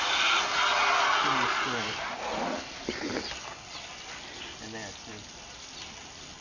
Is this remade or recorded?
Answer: recorded